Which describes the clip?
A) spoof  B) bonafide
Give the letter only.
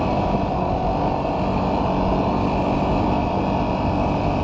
B